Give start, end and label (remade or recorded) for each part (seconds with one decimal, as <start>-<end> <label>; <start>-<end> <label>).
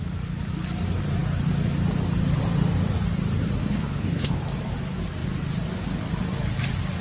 0.0-3.6 recorded; 3.6-4.4 remade; 4.4-7.0 recorded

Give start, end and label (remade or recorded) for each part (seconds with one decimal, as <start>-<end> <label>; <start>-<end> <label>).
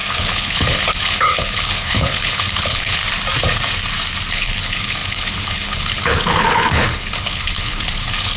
0.0-3.0 remade; 3.0-4.3 recorded; 4.3-8.4 remade